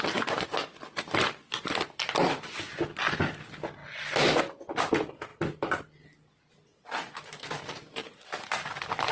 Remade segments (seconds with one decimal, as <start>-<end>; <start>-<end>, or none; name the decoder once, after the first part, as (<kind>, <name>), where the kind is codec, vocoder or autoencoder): none